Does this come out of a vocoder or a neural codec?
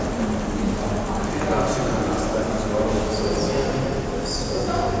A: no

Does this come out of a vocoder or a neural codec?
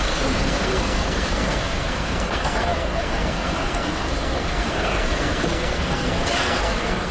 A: yes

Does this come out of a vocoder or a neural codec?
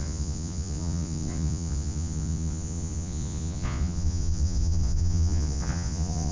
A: yes